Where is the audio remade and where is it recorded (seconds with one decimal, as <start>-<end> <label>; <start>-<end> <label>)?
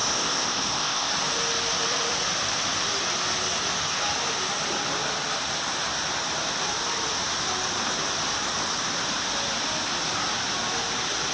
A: 0.0-1.1 remade; 1.1-11.3 recorded